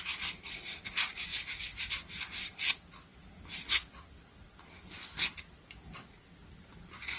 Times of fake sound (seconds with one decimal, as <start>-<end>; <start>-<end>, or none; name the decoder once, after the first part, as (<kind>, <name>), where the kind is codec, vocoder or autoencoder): none